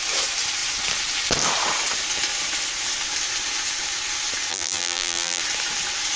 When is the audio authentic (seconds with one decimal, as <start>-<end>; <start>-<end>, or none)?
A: 0.0-4.5; 5.4-6.2